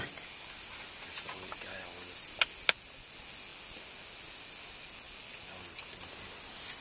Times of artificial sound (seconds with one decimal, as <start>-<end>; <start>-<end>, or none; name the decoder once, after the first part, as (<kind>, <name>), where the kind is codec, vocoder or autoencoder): none